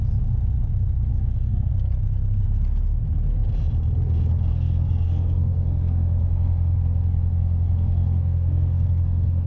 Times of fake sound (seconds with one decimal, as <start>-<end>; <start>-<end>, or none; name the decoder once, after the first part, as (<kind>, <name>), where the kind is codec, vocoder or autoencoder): 1.1-1.7 (codec, SNAC); 4.5-9.5